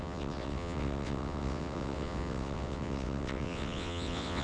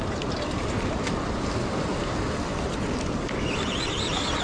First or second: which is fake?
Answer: first